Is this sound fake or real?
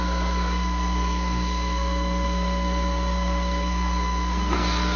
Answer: fake